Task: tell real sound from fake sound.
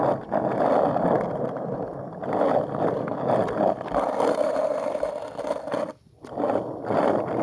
real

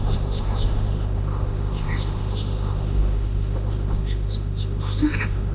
fake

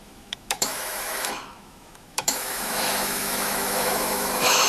fake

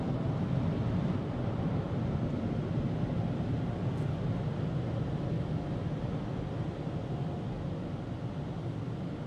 real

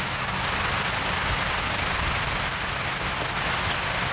real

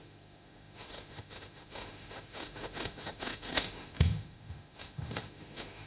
fake